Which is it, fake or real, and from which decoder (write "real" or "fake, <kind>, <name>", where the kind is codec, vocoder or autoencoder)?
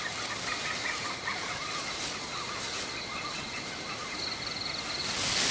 real